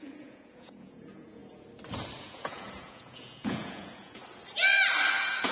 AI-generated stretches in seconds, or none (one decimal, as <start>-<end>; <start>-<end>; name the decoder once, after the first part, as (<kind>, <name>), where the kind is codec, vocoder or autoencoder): 0.0-1.4 (vocoder, Vocos); 2.2-4.2; 5.1-5.5